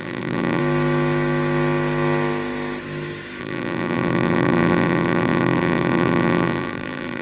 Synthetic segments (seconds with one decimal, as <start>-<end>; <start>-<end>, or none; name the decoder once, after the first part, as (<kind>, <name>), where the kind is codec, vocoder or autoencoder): 0.0-0.6 (vocoder, BigVGAN v2); 3.4-7.2